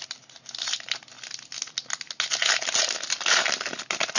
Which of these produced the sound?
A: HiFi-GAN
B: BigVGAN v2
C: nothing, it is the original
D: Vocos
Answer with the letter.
C